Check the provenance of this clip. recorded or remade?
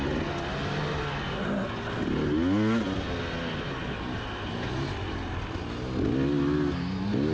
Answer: recorded